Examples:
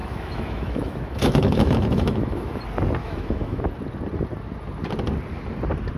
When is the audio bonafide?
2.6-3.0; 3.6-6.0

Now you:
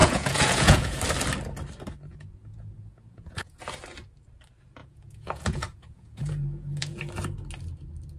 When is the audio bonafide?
1.0-2.1; 3.6-4.8; 7.0-8.2

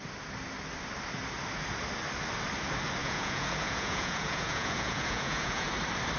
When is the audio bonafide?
0.0-3.0; 5.7-6.2

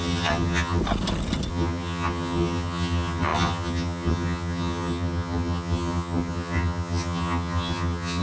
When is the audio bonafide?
0.8-1.5

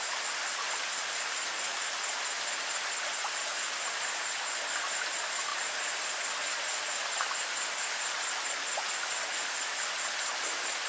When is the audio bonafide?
0.0-10.9

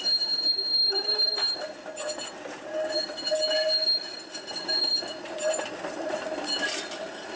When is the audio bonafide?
0.0-7.4

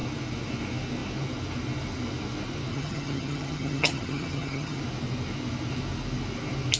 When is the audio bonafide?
0.0-2.7; 4.8-6.8